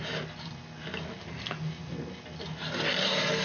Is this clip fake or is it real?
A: real